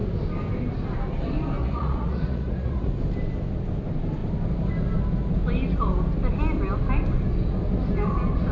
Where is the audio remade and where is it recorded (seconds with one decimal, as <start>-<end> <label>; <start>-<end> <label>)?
0.0-1.6 recorded; 1.6-2.9 remade; 2.9-8.5 recorded